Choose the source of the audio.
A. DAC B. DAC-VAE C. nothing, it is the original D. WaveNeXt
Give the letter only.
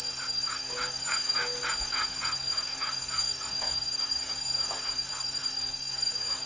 A